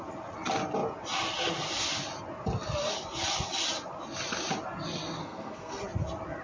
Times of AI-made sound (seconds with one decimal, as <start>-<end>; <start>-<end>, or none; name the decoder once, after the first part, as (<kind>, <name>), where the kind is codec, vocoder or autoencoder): 5.2-5.8 (codec, SNAC)

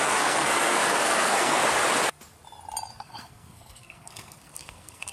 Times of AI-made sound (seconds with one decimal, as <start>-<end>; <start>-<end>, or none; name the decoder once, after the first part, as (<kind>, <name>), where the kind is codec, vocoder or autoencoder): 0.0-1.6 (codec, SNAC); 2.9-5.1

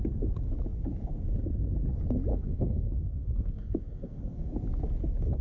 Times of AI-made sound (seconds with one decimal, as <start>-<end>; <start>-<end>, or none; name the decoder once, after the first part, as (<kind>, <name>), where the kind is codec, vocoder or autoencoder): 2.3-4.5 (codec, SNAC)

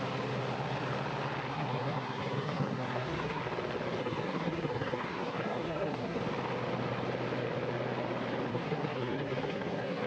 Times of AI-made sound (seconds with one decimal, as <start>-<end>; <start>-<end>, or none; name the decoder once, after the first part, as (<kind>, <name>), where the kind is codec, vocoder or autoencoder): 1.5-3.4 (codec, SNAC); 4.0-6.2; 8.5-10.1

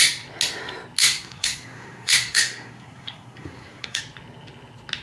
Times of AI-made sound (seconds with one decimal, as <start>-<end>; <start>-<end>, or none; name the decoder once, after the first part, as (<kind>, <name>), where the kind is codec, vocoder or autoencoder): 1.0-4.0 (codec, SNAC)

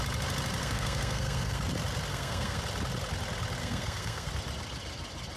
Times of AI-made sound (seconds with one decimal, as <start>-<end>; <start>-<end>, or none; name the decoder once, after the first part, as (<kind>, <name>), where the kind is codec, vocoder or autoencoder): 0.6-1.6 (codec, SNAC); 2.1-2.6; 3.6-4.3

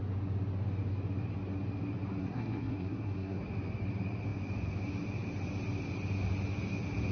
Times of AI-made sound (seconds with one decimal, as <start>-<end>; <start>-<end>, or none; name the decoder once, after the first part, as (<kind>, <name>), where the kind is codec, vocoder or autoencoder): 2.2-3.4 (codec, SNAC)